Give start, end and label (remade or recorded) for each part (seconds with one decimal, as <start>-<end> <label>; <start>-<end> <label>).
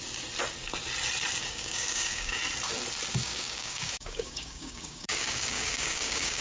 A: 0.0-1.4 recorded; 1.4-2.4 remade; 2.4-3.2 recorded; 3.2-6.4 remade